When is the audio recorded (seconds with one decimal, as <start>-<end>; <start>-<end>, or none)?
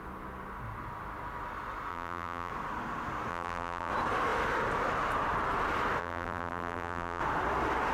0.0-1.9; 2.5-3.3; 3.9-6.0; 7.2-7.9